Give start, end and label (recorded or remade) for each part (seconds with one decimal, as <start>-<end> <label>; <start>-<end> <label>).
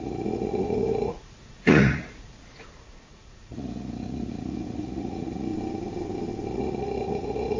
0.0-5.5 remade; 5.5-6.5 recorded; 6.5-7.6 remade